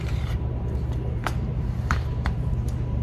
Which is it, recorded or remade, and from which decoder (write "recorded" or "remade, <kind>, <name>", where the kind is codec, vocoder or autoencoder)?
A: remade, vocoder, BigVGAN v2